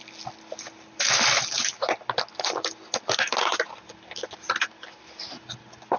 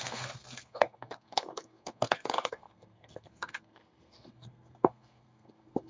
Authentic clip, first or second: first